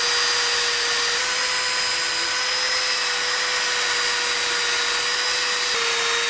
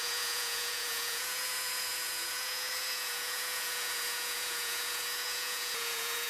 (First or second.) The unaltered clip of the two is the first